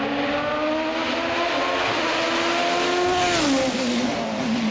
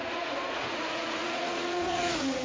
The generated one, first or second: second